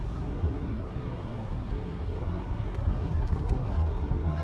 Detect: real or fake fake